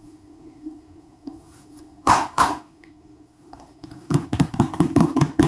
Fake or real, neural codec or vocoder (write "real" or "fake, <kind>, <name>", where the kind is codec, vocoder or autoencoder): fake, codec, SNAC